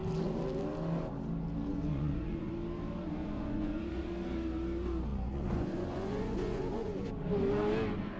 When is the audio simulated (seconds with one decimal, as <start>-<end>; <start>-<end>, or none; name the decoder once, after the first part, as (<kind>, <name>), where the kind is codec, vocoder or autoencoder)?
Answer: 1.7-2.5 (vocoder, Vocos); 3.2-4.1; 5.1-7.1